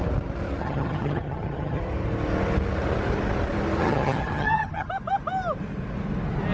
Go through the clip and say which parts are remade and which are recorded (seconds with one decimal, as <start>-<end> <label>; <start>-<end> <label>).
0.0-0.6 recorded; 0.6-1.8 remade; 1.8-3.8 recorded; 3.8-4.9 remade; 4.9-6.5 recorded